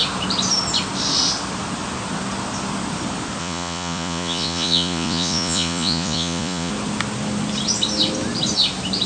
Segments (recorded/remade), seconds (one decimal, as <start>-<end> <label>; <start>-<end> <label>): 0.0-3.4 recorded; 3.4-6.7 remade; 6.7-9.1 recorded